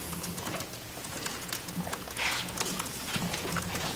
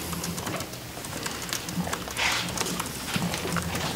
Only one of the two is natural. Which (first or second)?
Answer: second